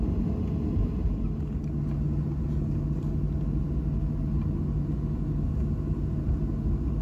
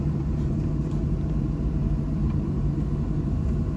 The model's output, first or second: second